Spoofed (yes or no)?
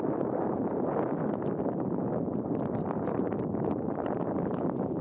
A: no